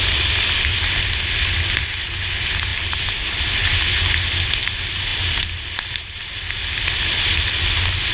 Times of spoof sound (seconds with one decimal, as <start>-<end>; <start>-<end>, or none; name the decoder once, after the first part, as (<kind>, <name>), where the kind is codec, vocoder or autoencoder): none